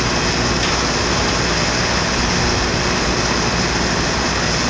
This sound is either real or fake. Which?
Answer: real